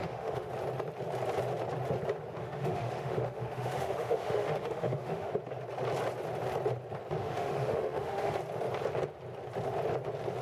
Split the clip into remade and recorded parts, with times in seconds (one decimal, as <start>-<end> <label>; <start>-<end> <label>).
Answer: 0.0-0.5 remade; 0.5-2.4 recorded; 2.4-5.3 remade; 5.3-7.2 recorded; 7.2-8.4 remade; 8.4-10.4 recorded